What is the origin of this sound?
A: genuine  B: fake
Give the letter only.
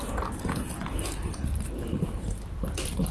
A